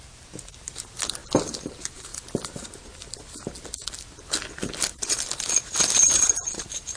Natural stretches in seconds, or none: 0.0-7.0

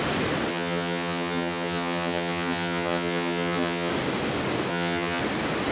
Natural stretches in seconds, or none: 0.0-0.5; 3.9-4.7; 5.2-5.7

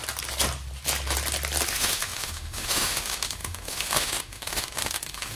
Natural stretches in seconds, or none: 0.0-1.7

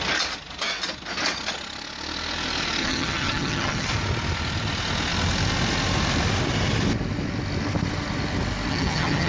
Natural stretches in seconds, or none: 0.0-2.8; 3.9-8.7

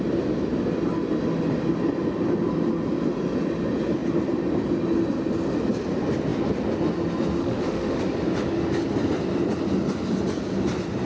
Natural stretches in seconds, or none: 0.0-7.4; 8.0-11.1

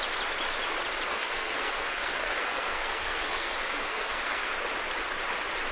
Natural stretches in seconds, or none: 0.0-1.1; 4.5-5.7

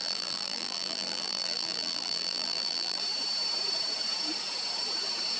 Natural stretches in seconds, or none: 3.0-5.4